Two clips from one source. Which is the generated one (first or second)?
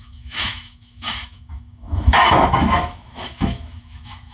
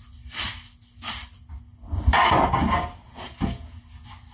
first